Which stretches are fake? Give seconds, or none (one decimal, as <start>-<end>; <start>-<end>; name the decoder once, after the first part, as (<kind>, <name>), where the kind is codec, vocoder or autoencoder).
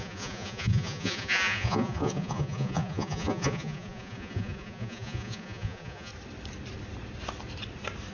0.0-6.1 (vocoder, Vocos)